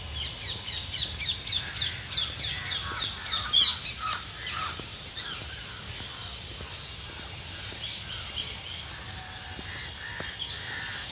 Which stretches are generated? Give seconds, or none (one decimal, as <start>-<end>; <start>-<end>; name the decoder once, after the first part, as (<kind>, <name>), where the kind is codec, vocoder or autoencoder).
3.7-5.8 (vocoder, BigVGAN v2)